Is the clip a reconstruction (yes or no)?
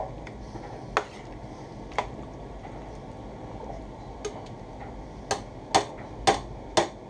no